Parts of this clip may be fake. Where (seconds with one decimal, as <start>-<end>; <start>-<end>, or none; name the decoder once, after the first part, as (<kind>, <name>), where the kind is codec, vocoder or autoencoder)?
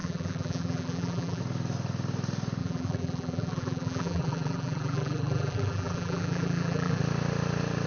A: 0.0-1.4 (vocoder, BigVGAN v2); 2.6-7.0